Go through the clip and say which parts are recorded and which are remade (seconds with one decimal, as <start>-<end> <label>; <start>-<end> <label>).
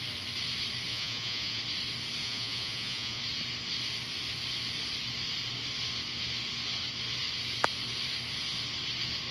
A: 0.0-0.9 recorded; 0.9-1.6 remade; 1.6-2.2 recorded; 2.2-3.2 remade; 3.2-9.3 recorded